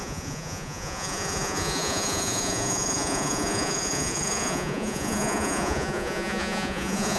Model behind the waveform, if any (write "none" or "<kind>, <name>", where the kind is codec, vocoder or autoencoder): vocoder, Vocos